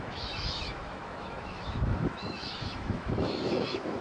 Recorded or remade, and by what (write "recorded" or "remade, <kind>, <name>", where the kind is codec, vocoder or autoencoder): remade, autoencoder, DAC-VAE